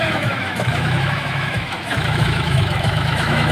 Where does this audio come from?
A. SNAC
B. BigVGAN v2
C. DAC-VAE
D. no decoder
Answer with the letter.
C